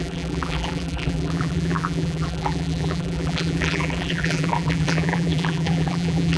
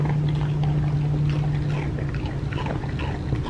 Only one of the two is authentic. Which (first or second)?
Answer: second